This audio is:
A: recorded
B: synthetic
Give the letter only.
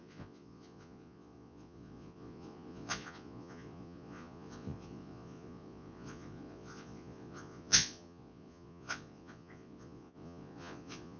B